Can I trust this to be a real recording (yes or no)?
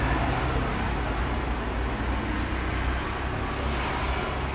yes